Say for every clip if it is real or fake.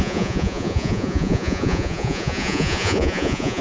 fake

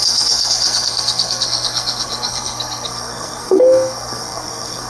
fake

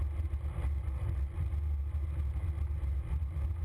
real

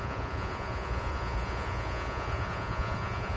fake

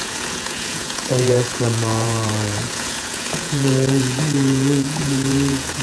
fake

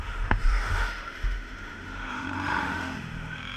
fake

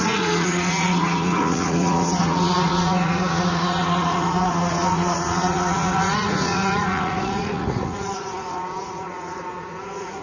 fake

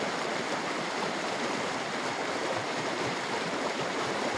fake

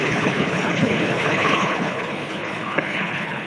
fake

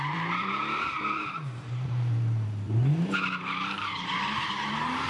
fake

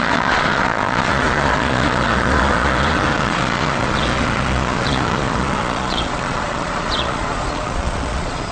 fake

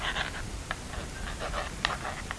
real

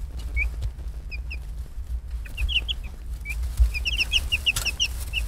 real